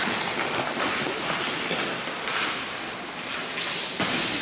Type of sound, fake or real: real